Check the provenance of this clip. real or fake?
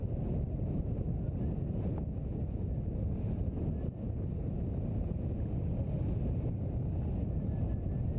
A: real